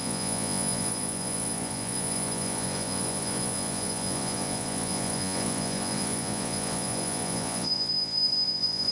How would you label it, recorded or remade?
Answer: remade